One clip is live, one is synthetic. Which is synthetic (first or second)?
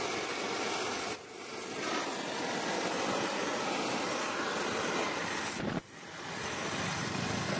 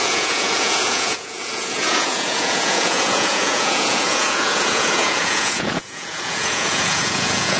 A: second